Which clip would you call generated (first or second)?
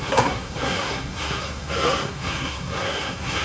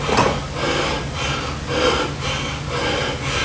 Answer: first